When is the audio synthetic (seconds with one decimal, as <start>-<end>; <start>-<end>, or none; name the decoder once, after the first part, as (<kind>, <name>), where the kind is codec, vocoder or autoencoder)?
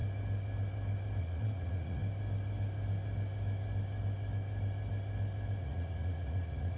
1.2-2.0 (vocoder, Vocos); 5.6-6.8